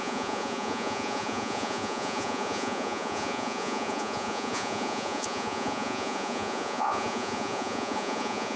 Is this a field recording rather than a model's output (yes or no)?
no